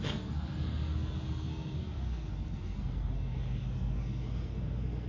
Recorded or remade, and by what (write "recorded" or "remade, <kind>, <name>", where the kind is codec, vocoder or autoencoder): remade, codec, SNAC